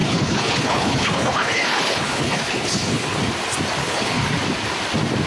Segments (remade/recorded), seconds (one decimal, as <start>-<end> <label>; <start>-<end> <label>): 0.0-3.2 remade; 3.2-3.8 recorded; 3.8-4.3 remade; 4.3-5.3 recorded